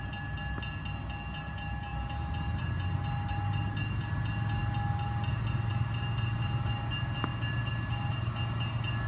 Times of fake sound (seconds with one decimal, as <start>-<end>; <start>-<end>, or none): none